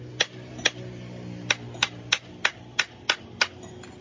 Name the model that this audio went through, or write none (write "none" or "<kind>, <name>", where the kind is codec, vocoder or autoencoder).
none